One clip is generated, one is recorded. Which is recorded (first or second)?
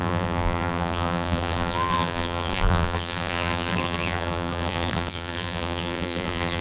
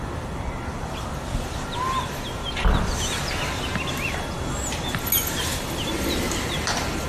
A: second